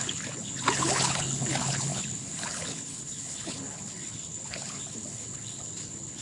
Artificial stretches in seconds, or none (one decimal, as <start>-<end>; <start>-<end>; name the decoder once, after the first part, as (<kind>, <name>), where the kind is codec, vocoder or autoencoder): 0.0-6.2 (codec, HILCodec)